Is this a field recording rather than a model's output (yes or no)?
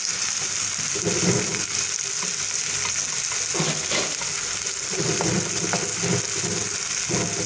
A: yes